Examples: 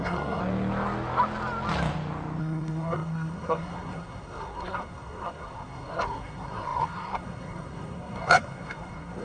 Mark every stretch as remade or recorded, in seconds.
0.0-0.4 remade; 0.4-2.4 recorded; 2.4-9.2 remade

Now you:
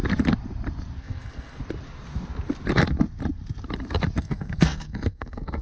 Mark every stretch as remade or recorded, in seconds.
0.0-1.0 recorded; 1.0-1.6 remade; 1.6-4.2 recorded; 4.2-5.6 remade

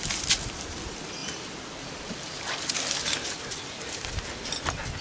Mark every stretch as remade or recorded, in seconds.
0.0-1.2 recorded; 1.2-4.2 remade; 4.2-5.0 recorded

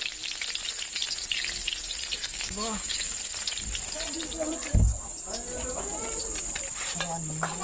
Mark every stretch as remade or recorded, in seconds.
0.0-2.2 recorded; 2.2-3.0 remade; 3.0-7.6 recorded

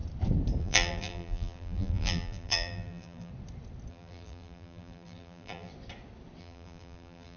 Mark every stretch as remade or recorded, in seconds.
0.0-0.6 recorded; 0.6-3.3 remade; 3.3-3.9 recorded; 3.9-5.7 remade; 5.7-6.4 recorded; 6.4-7.4 remade

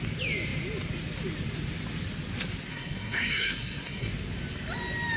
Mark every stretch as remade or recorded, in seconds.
0.0-2.7 recorded; 2.7-4.1 remade; 4.1-5.2 recorded

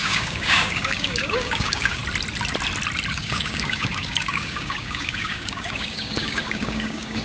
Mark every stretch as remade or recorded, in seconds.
0.0-2.0 remade; 2.0-3.1 recorded; 3.1-7.2 remade

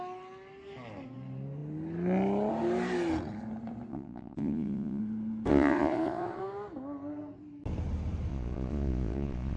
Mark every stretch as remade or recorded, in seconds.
0.0-3.9 recorded; 3.9-5.0 remade; 5.0-5.5 recorded; 5.5-6.4 remade; 6.4-8.3 recorded; 8.3-9.6 remade